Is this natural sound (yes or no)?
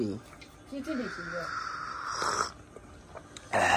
yes